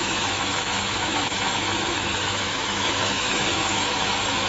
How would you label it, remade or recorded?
remade